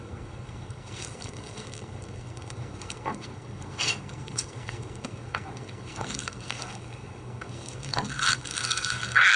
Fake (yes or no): yes